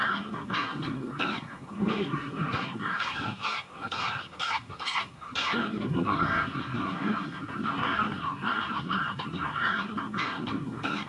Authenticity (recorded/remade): remade